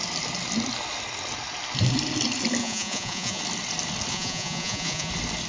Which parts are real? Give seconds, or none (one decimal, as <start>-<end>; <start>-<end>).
0.0-2.6; 3.4-4.1; 5.1-5.5